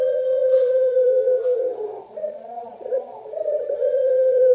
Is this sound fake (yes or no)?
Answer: yes